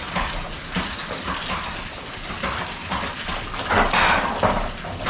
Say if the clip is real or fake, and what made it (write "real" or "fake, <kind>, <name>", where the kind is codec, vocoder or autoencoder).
real